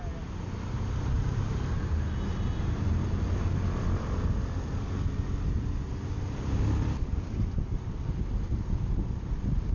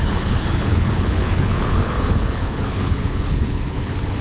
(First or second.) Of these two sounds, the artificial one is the second